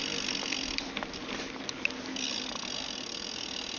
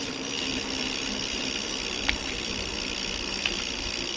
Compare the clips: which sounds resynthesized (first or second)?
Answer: second